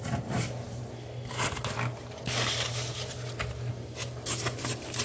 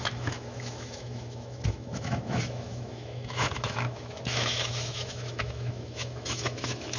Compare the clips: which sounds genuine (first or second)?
first